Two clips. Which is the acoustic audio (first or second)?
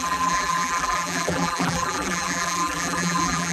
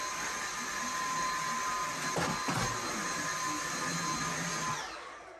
second